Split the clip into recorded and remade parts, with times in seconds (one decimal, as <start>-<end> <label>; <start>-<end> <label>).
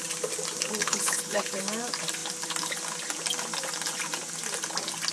0.0-0.8 recorded; 0.8-1.6 remade; 1.6-5.1 recorded